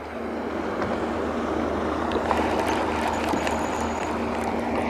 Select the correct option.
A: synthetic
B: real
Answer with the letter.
B